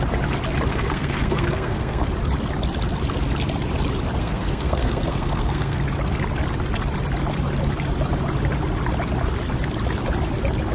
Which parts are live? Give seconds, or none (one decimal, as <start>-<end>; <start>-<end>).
0.0-0.7; 2.1-4.2; 5.8-10.7